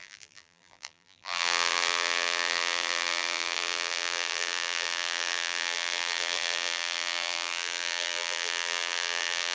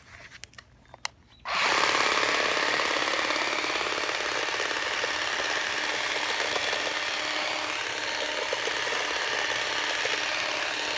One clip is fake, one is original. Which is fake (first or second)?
first